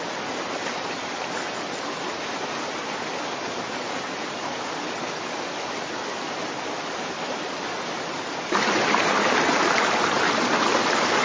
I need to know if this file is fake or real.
real